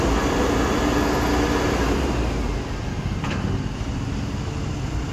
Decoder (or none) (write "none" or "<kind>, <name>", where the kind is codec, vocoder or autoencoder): none